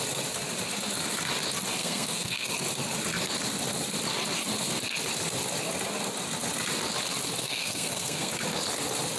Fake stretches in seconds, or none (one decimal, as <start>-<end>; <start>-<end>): 1.8-2.5; 7.4-8.3